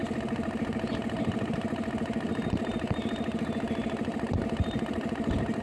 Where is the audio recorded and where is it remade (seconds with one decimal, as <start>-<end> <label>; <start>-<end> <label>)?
0.0-5.6 recorded